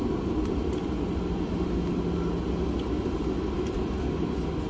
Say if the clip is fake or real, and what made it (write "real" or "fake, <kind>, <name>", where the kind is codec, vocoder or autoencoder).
real